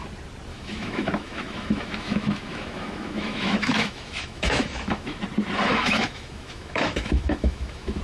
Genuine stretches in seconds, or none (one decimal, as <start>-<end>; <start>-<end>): 0.0-0.5; 5.2-5.7